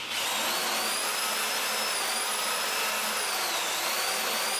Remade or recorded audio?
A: recorded